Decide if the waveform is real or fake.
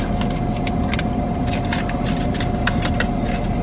real